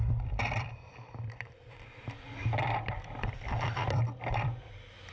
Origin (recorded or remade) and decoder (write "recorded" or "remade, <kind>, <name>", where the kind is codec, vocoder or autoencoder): remade, vocoder, BigVGAN v2